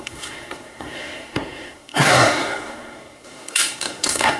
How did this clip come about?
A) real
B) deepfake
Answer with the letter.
B